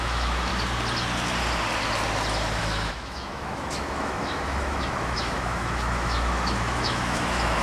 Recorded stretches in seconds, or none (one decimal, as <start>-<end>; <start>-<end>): 0.5-2.6